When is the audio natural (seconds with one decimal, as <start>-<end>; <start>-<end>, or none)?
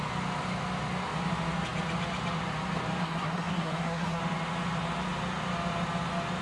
0.0-3.0; 4.2-6.4